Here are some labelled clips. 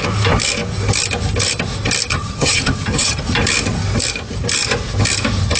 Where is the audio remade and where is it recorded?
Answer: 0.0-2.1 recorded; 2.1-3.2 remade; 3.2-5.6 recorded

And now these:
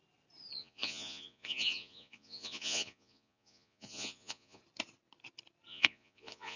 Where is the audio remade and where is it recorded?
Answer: 0.0-0.6 recorded; 0.6-4.6 remade; 4.6-5.7 recorded; 5.7-6.6 remade

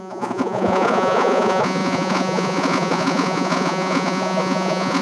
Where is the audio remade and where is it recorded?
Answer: 0.0-5.0 remade

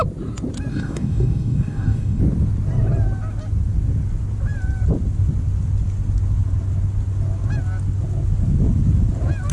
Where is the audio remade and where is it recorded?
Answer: 0.0-0.7 recorded; 0.7-2.2 remade; 2.2-9.5 recorded

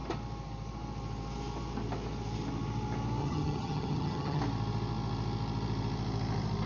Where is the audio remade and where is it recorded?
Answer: 0.0-3.2 recorded; 3.2-4.4 remade; 4.4-6.7 recorded

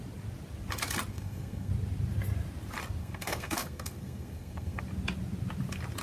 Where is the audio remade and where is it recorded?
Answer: 0.0-1.1 recorded; 1.1-1.7 remade; 1.7-3.0 recorded; 3.0-4.8 remade; 4.8-6.0 recorded

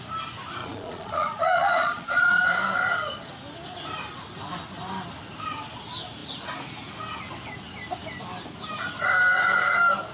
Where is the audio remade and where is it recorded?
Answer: 0.0-0.6 recorded; 0.6-2.4 remade; 2.4-10.1 recorded